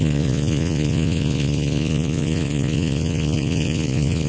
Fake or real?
fake